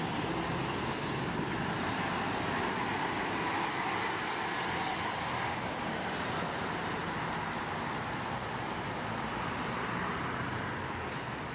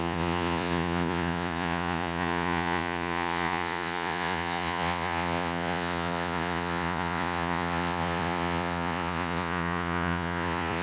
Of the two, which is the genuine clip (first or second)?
first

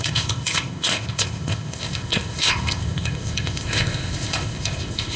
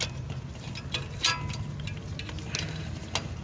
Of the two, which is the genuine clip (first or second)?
second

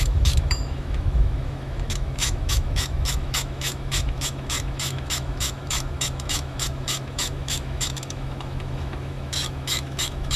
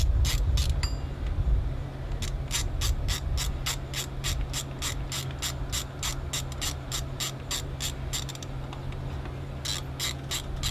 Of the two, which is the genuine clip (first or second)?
second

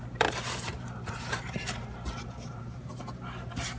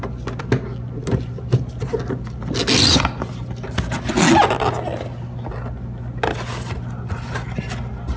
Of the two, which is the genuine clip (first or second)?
second